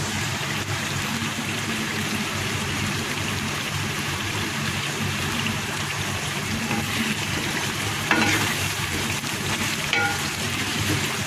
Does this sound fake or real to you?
fake